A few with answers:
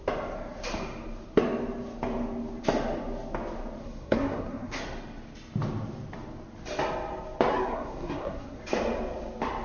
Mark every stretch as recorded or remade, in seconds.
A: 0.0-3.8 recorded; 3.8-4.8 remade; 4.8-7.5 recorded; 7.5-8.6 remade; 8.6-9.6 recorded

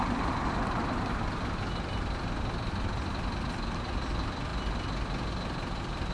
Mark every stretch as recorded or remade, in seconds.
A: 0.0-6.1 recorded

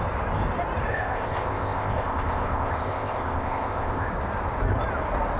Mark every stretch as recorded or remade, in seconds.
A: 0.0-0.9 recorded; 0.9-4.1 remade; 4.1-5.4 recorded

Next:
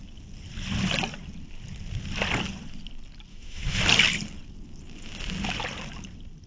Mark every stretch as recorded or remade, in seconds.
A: 0.0-3.3 recorded; 3.3-3.8 remade; 3.8-6.5 recorded